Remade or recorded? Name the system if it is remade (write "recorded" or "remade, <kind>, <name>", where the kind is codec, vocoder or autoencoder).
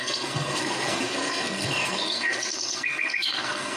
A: remade, codec, SNAC